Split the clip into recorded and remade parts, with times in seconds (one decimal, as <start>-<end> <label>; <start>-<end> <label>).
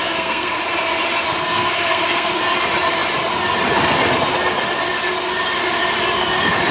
0.0-0.6 remade; 0.6-1.4 recorded; 1.4-2.3 remade; 2.3-6.7 recorded